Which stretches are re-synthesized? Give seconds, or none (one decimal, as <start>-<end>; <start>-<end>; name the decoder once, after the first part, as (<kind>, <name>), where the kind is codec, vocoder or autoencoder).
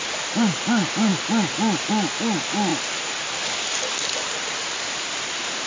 none